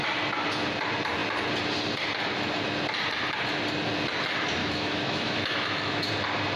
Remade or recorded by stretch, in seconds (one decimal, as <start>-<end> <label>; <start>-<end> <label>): 0.0-4.6 recorded; 4.6-6.1 remade; 6.1-6.6 recorded